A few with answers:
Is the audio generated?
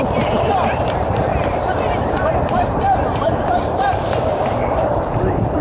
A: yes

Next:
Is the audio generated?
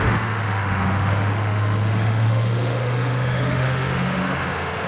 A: yes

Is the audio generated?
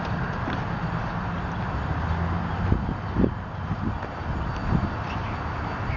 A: no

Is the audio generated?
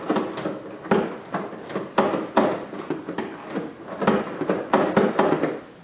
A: no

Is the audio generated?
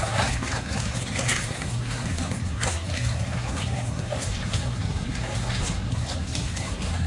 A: yes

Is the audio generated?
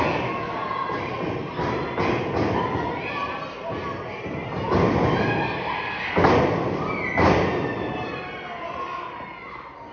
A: no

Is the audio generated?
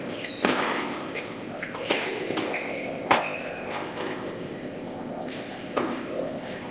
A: yes